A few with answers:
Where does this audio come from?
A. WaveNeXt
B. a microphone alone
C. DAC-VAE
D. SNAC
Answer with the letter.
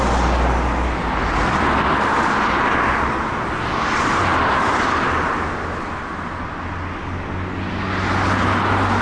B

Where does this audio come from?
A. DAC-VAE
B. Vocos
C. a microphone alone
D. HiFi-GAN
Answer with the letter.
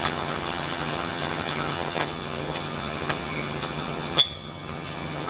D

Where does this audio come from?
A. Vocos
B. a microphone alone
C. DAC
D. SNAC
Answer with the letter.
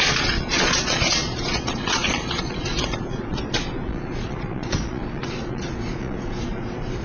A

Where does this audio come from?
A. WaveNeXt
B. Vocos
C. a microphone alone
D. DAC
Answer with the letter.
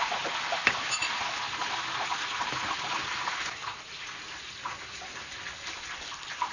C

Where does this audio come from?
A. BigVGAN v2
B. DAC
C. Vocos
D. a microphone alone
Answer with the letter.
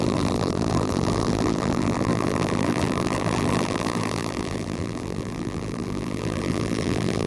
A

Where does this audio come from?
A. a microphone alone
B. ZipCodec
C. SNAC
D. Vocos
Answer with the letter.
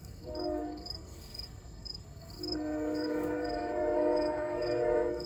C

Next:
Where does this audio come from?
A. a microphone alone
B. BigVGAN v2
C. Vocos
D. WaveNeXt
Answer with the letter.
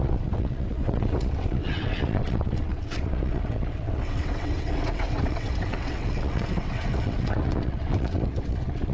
D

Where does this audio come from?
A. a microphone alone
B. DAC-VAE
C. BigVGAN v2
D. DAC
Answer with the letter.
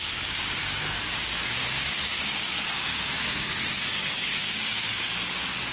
D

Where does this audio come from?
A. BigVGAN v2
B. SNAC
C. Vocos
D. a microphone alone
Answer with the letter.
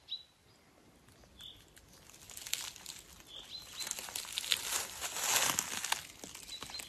D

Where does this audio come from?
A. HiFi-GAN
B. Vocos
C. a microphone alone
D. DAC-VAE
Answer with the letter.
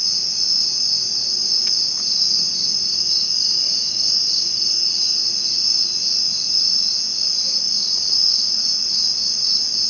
C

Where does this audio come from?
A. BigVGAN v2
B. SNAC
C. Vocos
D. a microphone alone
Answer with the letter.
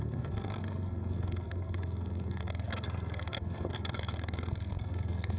B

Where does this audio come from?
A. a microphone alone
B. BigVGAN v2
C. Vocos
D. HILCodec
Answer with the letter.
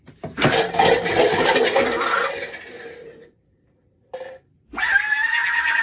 B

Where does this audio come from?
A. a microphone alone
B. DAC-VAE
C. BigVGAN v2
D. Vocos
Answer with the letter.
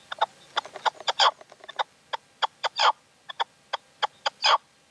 A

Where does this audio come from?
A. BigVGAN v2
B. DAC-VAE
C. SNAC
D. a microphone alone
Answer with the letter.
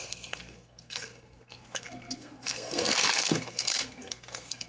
C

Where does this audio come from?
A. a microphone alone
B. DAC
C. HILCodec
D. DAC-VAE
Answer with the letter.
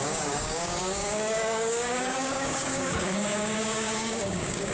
B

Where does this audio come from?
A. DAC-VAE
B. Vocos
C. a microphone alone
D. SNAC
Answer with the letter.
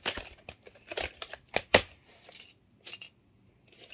C